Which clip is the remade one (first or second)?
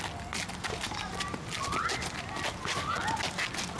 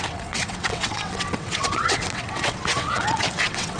second